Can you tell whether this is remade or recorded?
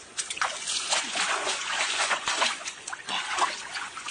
remade